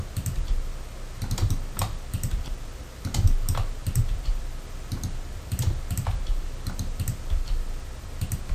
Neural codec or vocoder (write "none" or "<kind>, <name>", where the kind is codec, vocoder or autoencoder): none